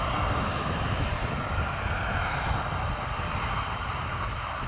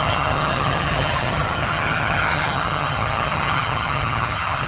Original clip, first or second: first